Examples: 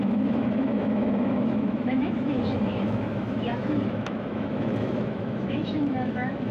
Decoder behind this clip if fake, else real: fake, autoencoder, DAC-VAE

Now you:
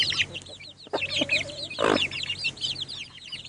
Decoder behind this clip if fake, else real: real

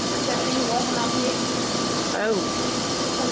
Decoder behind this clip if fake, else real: real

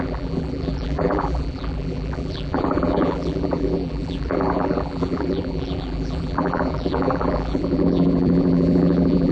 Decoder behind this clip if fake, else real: fake, vocoder, BigVGAN v2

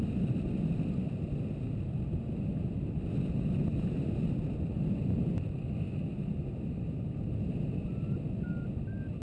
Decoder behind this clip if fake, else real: real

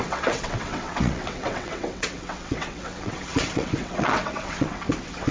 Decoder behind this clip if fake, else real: fake, vocoder, WaveNeXt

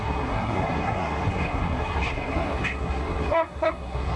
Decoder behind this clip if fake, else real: fake, codec, SNAC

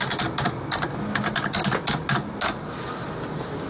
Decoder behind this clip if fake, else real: real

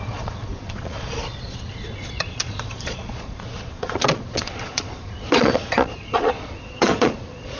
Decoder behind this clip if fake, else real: fake, vocoder, Vocos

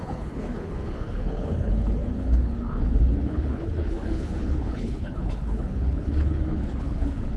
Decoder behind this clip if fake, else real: fake, codec, HILCodec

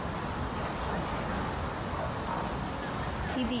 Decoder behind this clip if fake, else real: real